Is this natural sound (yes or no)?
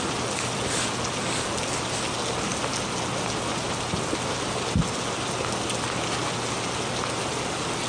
yes